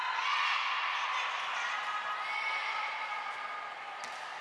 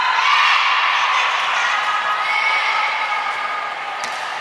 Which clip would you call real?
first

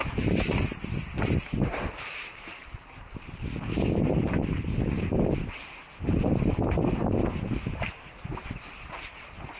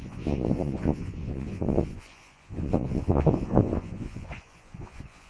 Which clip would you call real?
first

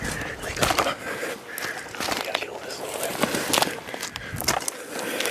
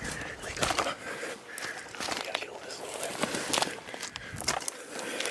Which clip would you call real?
first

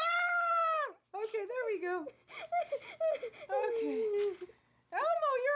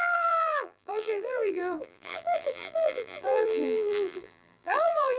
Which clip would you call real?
first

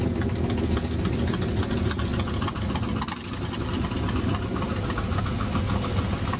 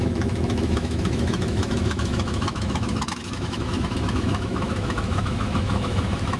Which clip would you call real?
first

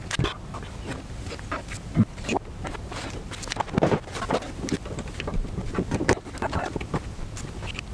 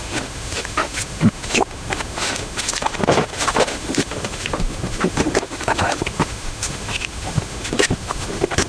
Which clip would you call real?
first